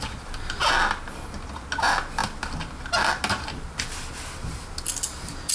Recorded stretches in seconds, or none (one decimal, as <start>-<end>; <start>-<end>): 0.0-5.5